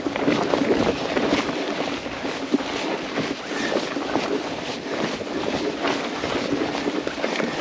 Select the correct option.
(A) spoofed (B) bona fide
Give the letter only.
B